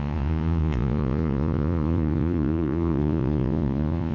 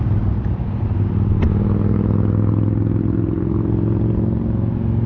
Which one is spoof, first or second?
first